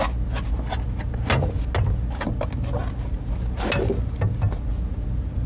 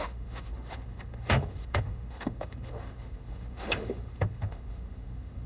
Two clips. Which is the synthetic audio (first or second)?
second